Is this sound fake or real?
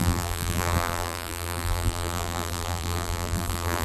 fake